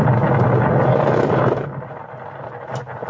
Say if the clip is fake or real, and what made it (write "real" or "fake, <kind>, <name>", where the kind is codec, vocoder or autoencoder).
real